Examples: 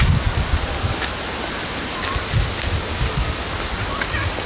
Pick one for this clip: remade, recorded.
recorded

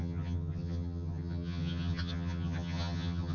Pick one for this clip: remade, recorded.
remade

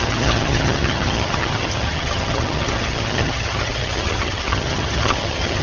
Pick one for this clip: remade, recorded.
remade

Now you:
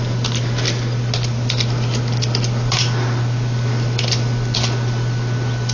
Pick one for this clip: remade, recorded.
recorded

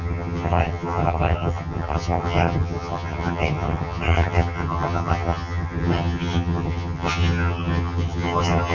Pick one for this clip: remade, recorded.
remade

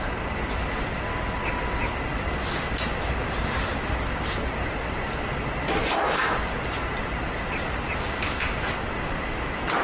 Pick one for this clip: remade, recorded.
recorded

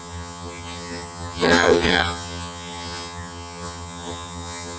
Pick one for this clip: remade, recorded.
remade